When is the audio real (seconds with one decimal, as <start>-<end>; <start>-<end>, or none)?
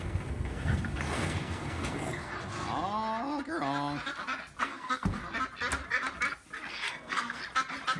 2.3-4.6; 5.2-6.7; 7.4-8.0